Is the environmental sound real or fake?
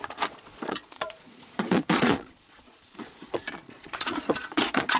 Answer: fake